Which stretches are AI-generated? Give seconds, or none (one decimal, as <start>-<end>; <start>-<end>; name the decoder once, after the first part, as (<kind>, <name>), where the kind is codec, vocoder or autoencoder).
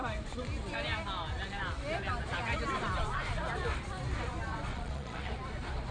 4.7-5.3 (vocoder, Vocos)